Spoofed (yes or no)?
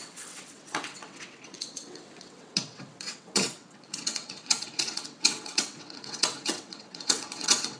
yes